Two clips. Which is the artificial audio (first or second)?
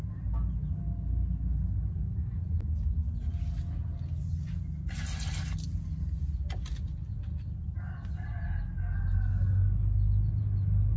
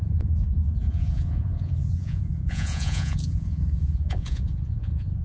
second